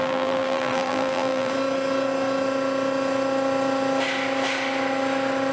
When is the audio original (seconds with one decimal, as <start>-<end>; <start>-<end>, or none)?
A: 1.5-5.5